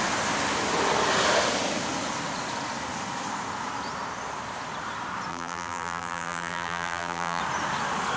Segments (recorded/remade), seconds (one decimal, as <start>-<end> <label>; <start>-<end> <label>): 0.0-5.3 recorded; 5.3-7.4 remade; 7.4-8.2 recorded